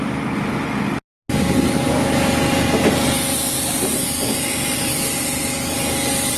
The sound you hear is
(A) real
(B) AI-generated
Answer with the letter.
A